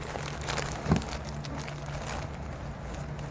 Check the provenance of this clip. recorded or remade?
recorded